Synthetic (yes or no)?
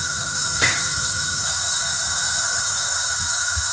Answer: yes